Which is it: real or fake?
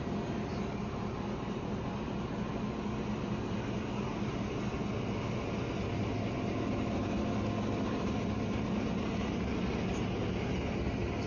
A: real